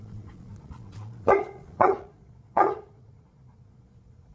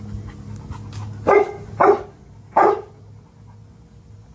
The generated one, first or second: first